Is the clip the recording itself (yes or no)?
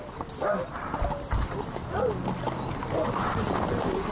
yes